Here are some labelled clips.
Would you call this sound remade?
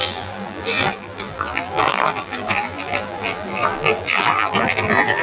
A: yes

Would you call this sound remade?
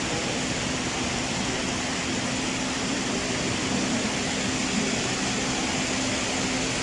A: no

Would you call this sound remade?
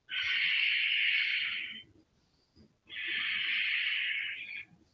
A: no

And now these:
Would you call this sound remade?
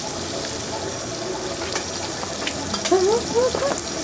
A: no